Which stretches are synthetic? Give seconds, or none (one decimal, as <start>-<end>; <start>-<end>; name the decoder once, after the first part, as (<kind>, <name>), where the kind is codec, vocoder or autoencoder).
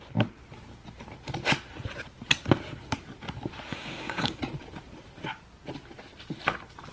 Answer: 3.7-4.4 (codec, DAC)